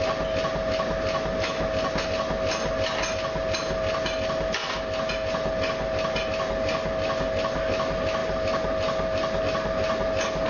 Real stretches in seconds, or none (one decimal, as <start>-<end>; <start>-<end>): 0.0-10.5